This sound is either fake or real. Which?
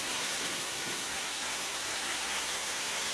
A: fake